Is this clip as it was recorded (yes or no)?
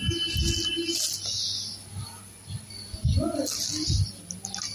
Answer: yes